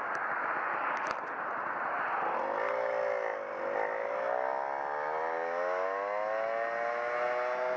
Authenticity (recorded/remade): recorded